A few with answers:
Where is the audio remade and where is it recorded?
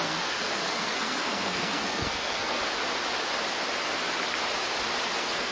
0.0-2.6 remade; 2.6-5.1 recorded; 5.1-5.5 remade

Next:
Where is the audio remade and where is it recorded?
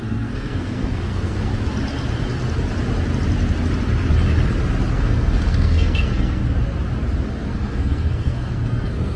0.0-1.5 remade; 1.5-4.9 recorded; 4.9-6.4 remade; 6.4-7.3 recorded; 7.3-9.2 remade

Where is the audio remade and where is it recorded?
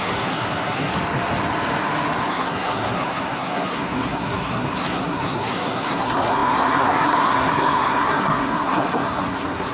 0.0-0.9 remade; 0.9-2.3 recorded; 2.3-9.7 remade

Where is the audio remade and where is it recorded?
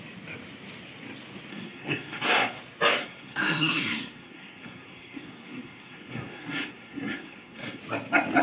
0.0-1.5 recorded; 1.5-2.6 remade; 2.6-3.0 recorded; 3.0-7.8 remade; 7.8-8.4 recorded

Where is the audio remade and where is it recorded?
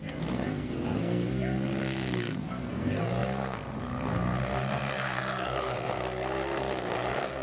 0.0-7.4 remade